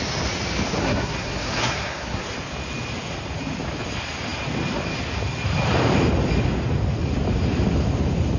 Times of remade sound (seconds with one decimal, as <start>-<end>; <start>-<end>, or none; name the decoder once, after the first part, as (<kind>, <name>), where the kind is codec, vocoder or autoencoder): 0.8-2.2 (codec, SNAC)